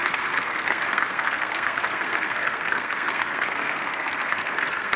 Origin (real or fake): fake